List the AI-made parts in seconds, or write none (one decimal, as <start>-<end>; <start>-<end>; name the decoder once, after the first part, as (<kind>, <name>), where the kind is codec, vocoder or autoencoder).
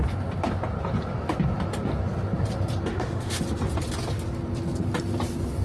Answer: 2.9-3.4 (autoencoder, DAC-VAE)